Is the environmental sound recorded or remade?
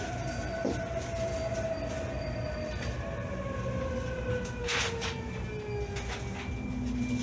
recorded